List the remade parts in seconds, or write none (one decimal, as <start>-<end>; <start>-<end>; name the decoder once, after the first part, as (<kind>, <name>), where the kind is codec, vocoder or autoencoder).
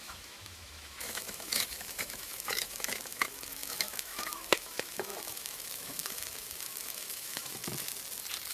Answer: 0.0-7.6 (autoencoder, DAC-VAE)